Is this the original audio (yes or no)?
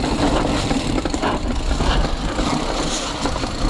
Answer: yes